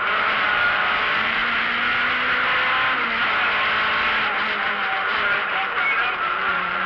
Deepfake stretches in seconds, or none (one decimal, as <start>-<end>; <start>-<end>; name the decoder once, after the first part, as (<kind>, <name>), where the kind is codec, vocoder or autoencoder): 0.0-1.4 (vocoder, BigVGAN v2); 4.5-6.9